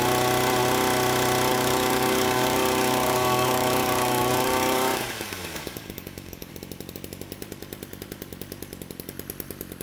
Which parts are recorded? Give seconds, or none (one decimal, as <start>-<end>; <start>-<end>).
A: 0.0-1.5; 6.5-9.8